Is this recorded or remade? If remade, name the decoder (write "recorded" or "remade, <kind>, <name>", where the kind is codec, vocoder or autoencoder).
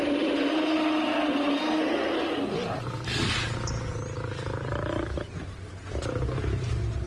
recorded